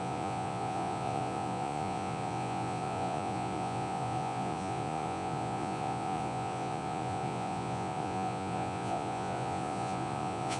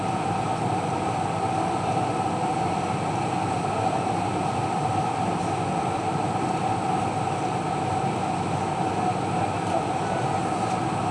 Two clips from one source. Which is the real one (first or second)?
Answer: second